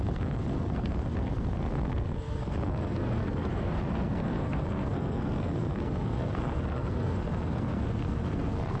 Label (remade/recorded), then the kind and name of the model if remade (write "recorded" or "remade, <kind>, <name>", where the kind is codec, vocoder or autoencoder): remade, codec, SNAC